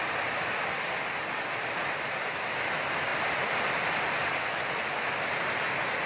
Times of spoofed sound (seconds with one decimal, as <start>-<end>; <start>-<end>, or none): none